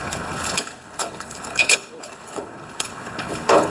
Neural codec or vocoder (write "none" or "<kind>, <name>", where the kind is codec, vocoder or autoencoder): codec, HILCodec